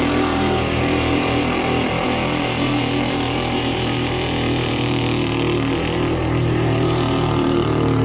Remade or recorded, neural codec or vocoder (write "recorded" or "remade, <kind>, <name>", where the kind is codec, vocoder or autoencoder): remade, vocoder, BigVGAN v2